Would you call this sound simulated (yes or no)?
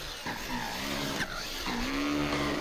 no